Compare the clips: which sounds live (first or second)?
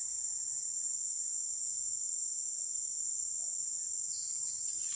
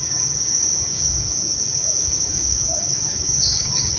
first